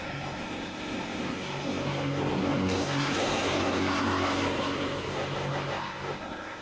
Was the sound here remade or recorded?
remade